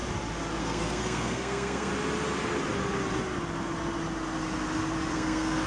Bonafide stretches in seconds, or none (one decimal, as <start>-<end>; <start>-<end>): 0.0-0.6; 1.9-5.1